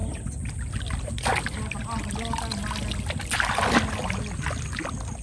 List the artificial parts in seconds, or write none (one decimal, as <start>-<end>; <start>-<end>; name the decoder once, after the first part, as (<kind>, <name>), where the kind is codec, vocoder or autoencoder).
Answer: none